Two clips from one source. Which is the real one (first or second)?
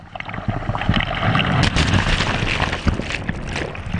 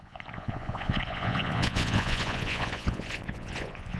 first